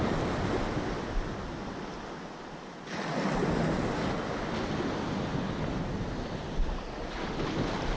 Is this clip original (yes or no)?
yes